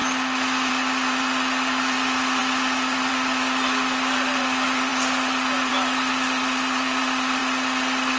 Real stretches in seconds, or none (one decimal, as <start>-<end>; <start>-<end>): 0.0-0.7; 7.4-8.2